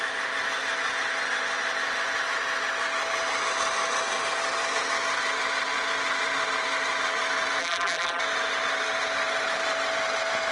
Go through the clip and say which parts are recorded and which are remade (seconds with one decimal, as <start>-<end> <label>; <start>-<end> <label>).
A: 0.0-7.6 recorded; 7.6-8.2 remade; 8.2-10.5 recorded